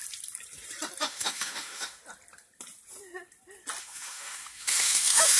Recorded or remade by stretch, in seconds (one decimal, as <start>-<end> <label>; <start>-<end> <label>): 0.0-1.0 recorded; 1.0-2.0 remade; 2.0-3.8 recorded; 3.8-5.4 remade